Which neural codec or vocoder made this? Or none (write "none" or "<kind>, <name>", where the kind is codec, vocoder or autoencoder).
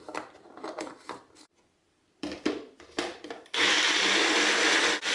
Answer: vocoder, BigVGAN v2